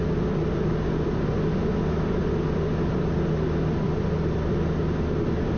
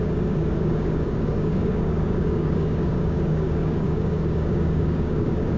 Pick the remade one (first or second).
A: second